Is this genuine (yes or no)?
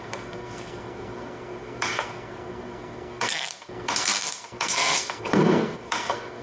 no